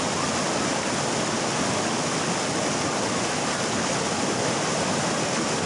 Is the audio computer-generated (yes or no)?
no